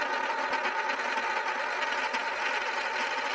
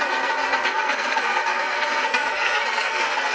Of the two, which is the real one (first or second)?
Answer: first